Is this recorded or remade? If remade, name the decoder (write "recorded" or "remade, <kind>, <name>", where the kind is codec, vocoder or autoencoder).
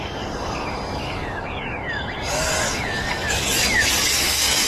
remade, codec, DAC